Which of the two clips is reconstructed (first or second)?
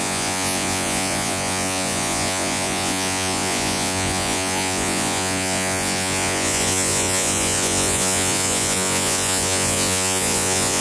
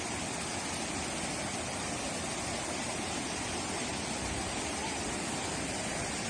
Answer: first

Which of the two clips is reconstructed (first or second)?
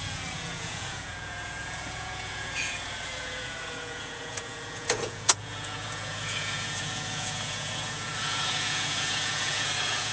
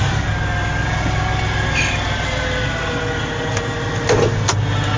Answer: first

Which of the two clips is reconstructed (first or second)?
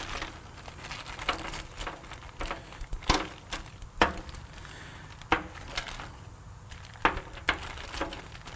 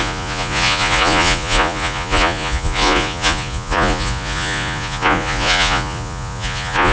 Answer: second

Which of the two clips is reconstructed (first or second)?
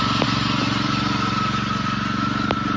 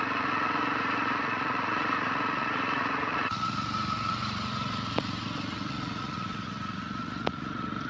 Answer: second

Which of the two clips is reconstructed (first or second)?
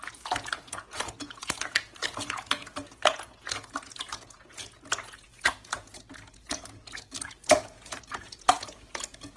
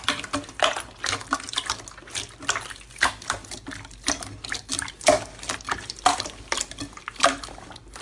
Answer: first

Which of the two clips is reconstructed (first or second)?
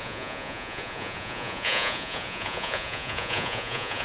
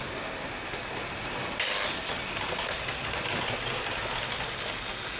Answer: first